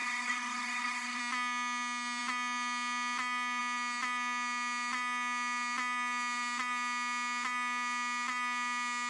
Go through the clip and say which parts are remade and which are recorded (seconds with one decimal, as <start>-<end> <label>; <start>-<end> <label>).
0.0-1.2 remade; 1.2-9.1 recorded